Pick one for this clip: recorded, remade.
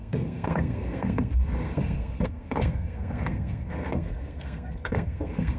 remade